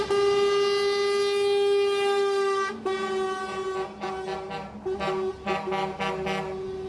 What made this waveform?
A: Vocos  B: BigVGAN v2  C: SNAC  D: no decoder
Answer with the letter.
D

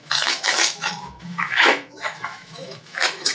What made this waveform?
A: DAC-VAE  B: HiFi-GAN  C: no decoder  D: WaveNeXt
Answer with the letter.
A